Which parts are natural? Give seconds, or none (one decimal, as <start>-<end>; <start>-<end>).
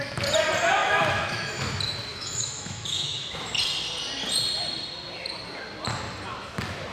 0.0-0.8; 1.6-2.1; 3.5-6.9